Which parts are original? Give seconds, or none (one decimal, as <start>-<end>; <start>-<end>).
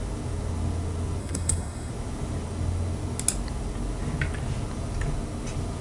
0.0-1.2; 1.9-5.8